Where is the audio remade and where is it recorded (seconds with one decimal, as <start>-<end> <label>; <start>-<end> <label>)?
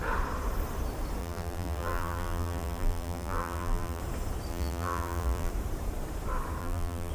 0.0-1.2 recorded; 1.2-4.0 remade; 4.0-4.5 recorded; 4.5-5.5 remade; 5.5-6.6 recorded; 6.6-7.1 remade